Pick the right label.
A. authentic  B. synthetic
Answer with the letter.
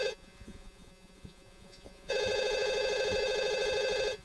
B